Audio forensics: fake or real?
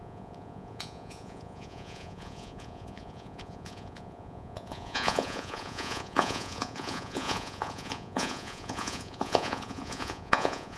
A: fake